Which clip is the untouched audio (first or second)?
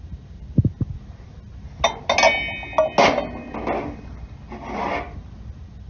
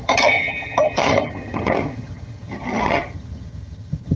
first